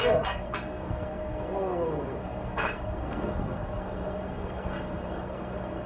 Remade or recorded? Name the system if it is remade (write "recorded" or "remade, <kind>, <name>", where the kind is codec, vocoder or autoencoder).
remade, codec, SNAC